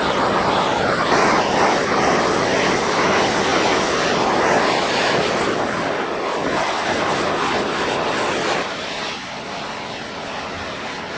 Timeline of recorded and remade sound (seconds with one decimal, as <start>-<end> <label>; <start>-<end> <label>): 0.0-11.2 recorded